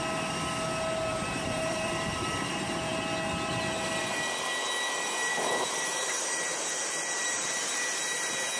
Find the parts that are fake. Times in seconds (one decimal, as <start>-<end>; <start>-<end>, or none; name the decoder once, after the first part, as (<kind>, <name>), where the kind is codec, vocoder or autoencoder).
1.1-2.5 (vocoder, BigVGAN v2); 5.3-8.2

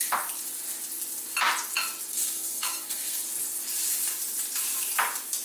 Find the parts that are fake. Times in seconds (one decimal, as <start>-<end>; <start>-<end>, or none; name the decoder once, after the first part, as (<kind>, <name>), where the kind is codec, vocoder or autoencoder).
2.1-3.2 (codec, SNAC)

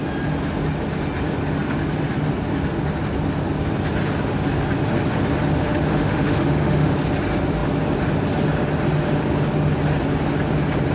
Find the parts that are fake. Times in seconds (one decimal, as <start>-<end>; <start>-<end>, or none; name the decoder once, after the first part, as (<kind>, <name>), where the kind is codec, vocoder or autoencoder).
5.6-6.9 (autoencoder, DAC-VAE)

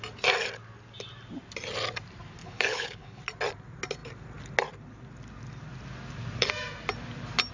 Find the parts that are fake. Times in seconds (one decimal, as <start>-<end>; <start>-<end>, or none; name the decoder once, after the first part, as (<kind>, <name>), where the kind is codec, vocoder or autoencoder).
2.4-3.2 (codec, HILCodec)